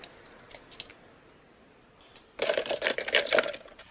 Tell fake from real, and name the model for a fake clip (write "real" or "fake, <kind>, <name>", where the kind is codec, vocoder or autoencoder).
real